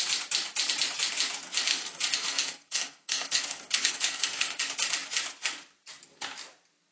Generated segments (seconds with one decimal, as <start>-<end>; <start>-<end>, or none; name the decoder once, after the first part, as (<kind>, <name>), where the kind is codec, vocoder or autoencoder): 1.7-4.6 (codec, SNAC)

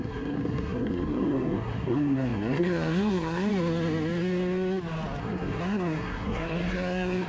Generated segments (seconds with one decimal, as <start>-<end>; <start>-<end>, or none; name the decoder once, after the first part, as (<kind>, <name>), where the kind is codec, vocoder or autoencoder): 0.0-3.5 (codec, SNAC); 5.2-7.3

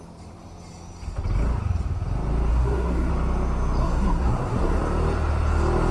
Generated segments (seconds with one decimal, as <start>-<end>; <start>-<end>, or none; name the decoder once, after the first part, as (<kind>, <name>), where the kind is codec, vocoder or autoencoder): 2.5-3.1 (codec, SNAC); 3.8-4.8

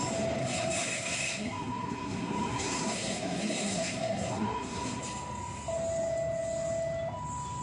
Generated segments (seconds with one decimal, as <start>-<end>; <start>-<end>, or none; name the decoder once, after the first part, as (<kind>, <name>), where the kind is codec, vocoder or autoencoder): 0.4-5.0 (codec, SNAC)

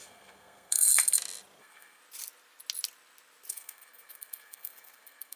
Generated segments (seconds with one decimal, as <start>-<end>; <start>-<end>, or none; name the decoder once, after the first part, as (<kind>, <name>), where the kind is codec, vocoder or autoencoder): 0.0-0.9 (codec, SNAC); 1.6-2.0; 3.5-5.4